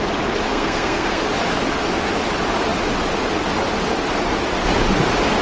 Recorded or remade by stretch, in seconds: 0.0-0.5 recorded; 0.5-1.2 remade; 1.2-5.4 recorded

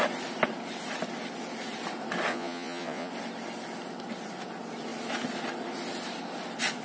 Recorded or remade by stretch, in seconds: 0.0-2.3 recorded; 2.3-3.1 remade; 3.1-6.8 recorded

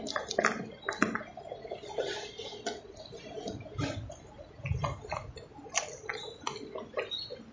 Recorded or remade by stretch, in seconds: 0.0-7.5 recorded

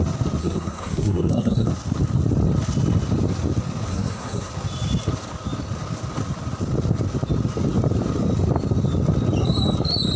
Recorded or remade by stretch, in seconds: 0.0-0.4 recorded; 0.4-1.7 remade; 1.7-3.9 recorded; 3.9-4.5 remade; 4.5-10.2 recorded